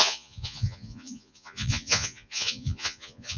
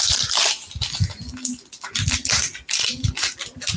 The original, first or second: second